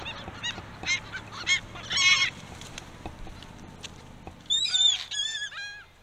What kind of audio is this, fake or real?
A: real